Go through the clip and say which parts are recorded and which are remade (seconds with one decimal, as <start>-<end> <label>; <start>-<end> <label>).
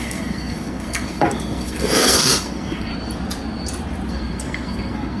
0.0-2.9 remade; 2.9-4.1 recorded; 4.1-5.2 remade